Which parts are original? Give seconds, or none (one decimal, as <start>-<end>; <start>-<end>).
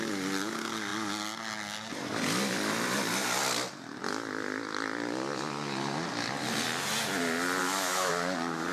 0.0-7.6; 8.1-8.7